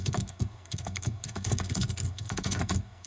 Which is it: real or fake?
fake